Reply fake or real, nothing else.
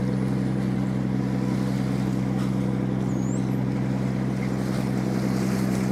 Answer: real